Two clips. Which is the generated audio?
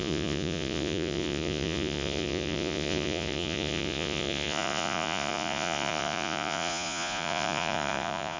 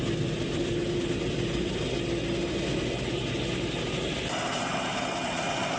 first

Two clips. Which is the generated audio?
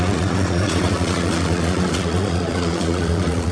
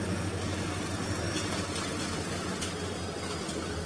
first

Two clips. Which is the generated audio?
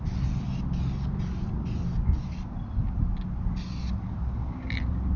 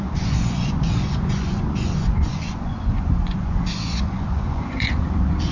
second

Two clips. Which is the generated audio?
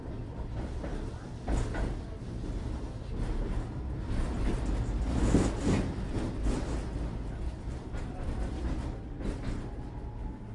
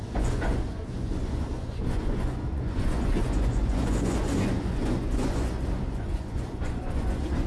second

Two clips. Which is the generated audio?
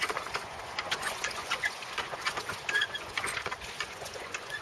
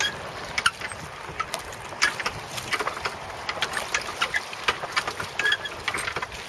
first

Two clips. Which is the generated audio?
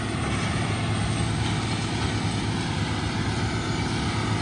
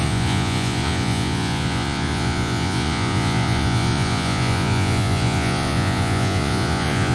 second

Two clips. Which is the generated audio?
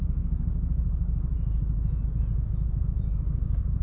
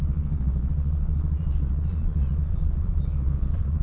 second